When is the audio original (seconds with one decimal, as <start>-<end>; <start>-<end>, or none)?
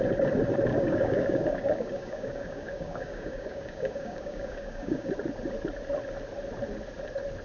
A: 0.0-0.7; 5.1-7.4